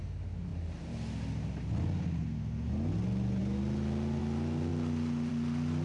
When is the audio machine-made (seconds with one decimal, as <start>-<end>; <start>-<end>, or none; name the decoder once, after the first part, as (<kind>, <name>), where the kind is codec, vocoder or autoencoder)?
none